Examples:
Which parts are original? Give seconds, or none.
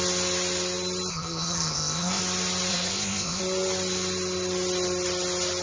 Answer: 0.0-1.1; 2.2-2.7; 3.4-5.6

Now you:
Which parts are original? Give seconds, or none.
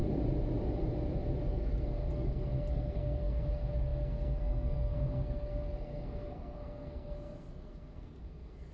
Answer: 0.0-1.5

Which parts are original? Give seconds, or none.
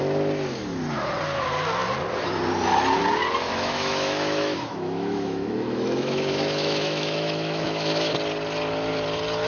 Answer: 0.0-3.5; 8.1-9.5